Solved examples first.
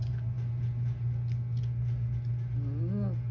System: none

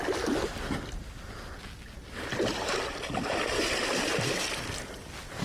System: none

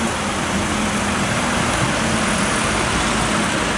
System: none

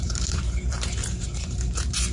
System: vocoder, BigVGAN v2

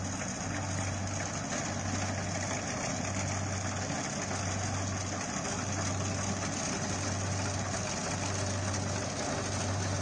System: none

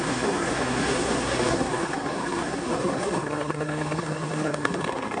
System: codec, SNAC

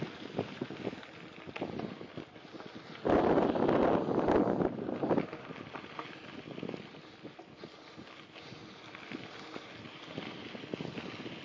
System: none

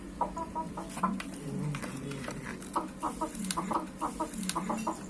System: none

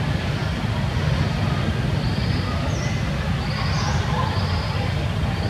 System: none